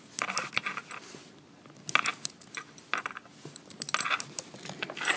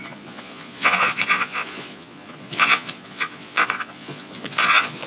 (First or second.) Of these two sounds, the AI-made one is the second